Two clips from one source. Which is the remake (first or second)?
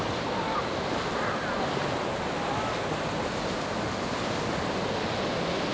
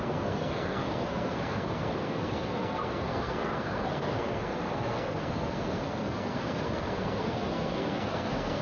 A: second